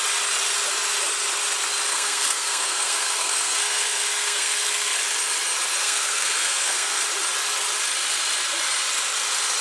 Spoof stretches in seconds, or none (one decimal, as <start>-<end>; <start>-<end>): 1.9-5.0; 5.8-7.0